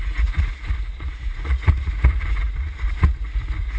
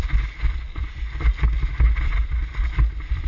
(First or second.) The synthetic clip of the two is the first